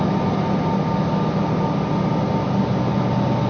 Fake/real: real